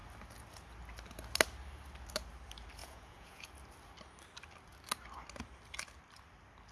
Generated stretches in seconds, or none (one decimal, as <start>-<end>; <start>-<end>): 2.8-3.5